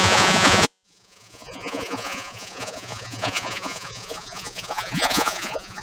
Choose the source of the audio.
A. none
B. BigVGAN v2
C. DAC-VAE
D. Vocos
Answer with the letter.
D